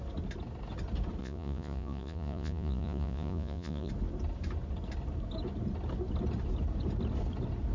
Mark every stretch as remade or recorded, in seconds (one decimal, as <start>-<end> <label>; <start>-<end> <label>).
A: 0.0-1.2 recorded; 1.2-3.9 remade; 3.9-7.7 recorded